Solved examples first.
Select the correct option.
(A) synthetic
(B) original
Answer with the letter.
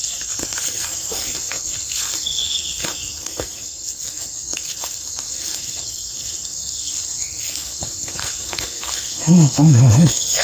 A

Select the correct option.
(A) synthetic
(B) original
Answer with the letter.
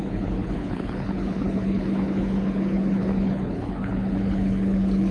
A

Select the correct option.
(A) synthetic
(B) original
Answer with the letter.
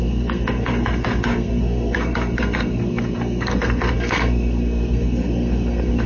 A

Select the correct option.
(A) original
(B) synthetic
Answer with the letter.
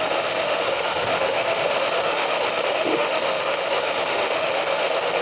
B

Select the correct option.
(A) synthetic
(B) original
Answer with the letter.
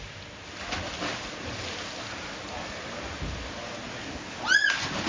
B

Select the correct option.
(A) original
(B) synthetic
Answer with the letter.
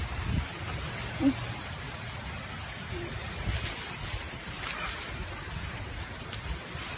A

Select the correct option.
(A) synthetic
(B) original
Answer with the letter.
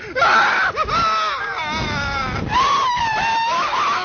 B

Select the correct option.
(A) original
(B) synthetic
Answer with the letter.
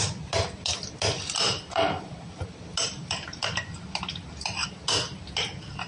A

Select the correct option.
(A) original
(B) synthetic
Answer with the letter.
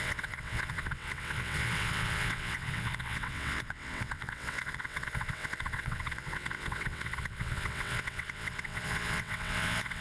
B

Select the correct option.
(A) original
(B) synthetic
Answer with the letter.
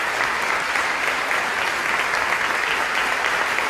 A